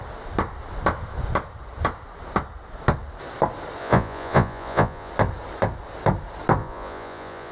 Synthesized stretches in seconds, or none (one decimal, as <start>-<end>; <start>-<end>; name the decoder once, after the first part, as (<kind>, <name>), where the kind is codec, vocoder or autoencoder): 3.8-5.1 (vocoder, Vocos); 6.6-7.5